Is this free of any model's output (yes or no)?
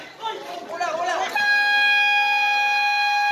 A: yes